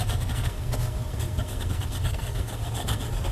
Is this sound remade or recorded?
remade